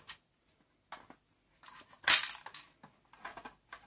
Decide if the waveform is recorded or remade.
recorded